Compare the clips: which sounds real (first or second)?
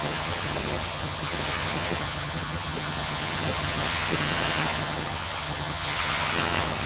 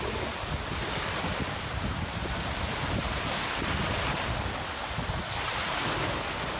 second